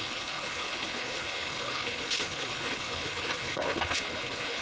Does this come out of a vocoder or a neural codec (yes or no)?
yes